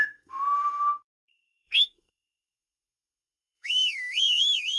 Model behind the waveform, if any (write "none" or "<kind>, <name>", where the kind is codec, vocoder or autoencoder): codec, SNAC